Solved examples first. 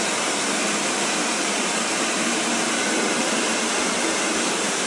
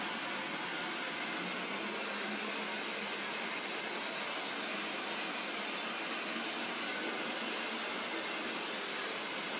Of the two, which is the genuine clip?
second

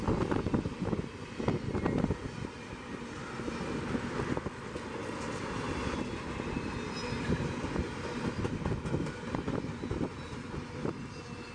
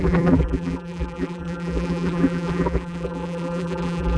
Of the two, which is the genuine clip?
first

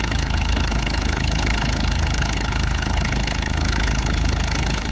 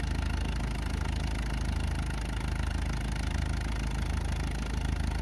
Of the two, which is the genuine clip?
second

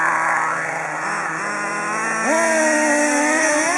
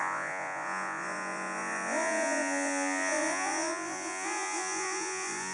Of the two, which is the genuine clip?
first